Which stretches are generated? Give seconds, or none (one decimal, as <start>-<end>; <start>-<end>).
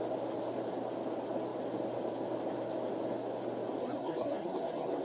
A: 3.8-5.0